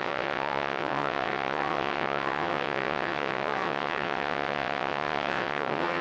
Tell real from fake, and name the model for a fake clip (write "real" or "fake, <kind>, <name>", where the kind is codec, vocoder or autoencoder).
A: fake, vocoder, WaveNeXt